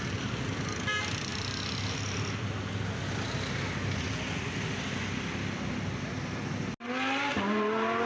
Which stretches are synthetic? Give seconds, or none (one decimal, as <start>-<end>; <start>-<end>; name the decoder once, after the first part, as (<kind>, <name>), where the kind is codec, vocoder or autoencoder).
none